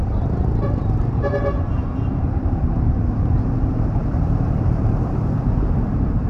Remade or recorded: remade